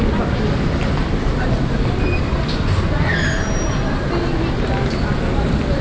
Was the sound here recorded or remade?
recorded